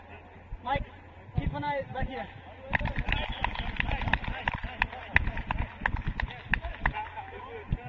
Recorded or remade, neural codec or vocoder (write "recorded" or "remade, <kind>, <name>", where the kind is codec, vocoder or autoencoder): recorded